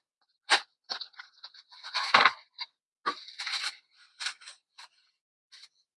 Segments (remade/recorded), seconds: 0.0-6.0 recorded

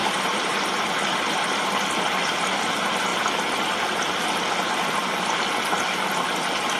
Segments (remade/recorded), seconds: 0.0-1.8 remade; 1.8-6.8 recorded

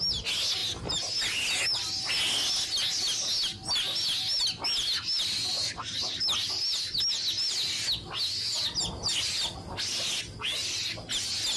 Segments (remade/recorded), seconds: 0.0-11.6 recorded

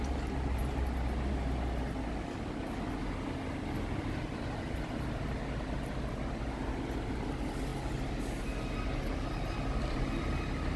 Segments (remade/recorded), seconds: 0.0-10.8 recorded

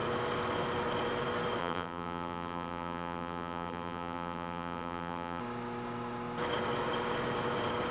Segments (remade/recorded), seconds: 0.0-1.6 recorded; 1.6-5.4 remade; 5.4-7.9 recorded